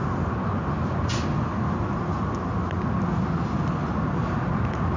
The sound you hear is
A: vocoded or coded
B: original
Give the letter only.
B